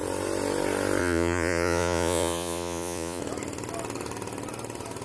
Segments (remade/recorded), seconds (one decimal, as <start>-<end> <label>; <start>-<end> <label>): 0.0-1.0 recorded; 1.0-3.2 remade; 3.2-5.0 recorded

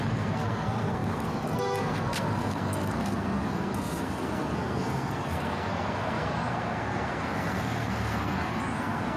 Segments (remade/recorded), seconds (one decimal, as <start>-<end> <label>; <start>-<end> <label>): 0.0-9.2 remade

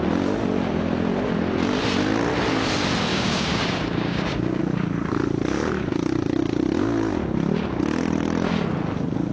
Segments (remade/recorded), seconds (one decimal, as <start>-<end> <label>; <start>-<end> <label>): 0.0-3.1 recorded; 3.1-4.6 remade; 4.6-9.3 recorded

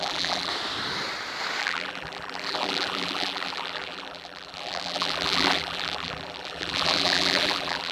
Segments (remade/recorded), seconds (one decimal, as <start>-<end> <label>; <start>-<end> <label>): 0.0-0.5 remade; 0.5-1.6 recorded; 1.6-7.9 remade

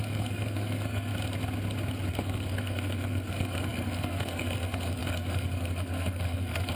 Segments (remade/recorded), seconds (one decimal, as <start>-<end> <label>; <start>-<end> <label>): 0.0-1.1 remade; 1.1-2.1 recorded; 2.1-6.8 remade

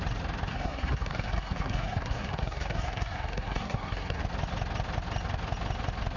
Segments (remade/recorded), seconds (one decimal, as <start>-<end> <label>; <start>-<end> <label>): 0.0-0.5 recorded; 0.5-4.2 remade; 4.2-6.2 recorded

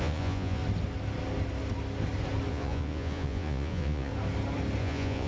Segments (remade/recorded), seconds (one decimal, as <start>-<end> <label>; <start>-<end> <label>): 0.0-0.6 remade; 0.6-2.5 recorded; 2.5-4.1 remade; 4.1-4.8 recorded; 4.8-5.3 remade

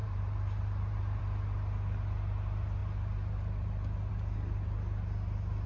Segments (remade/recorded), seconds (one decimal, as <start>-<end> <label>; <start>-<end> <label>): 0.0-1.2 remade; 1.2-5.7 recorded